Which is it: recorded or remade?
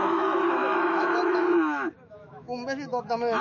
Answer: remade